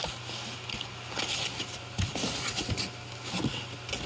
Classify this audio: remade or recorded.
recorded